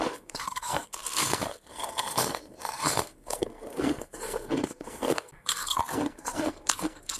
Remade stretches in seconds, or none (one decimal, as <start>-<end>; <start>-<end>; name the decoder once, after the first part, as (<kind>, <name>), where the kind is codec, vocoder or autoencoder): 0.0-7.2 (codec, SNAC)